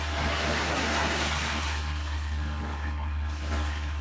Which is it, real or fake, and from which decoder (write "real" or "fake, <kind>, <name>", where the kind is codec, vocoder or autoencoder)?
fake, codec, SNAC